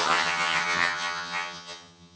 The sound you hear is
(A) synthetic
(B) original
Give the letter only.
A